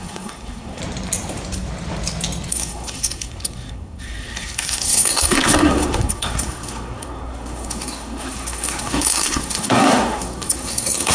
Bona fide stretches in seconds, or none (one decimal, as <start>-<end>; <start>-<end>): 0.8-2.5